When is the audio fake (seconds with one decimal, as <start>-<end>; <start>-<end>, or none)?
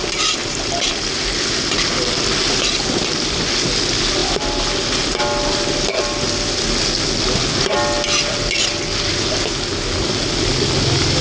0.4-0.9